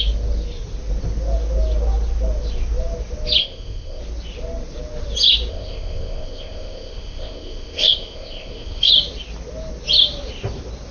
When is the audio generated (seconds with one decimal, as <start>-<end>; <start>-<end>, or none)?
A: 3.4-4.0; 5.5-8.9